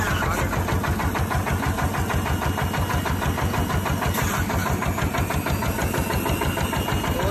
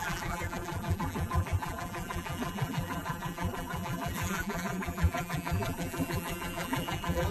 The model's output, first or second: second